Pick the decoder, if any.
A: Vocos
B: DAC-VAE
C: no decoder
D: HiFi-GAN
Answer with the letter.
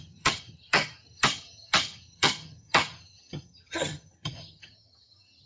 D